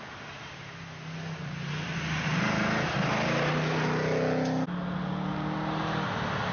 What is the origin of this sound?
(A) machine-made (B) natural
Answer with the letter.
B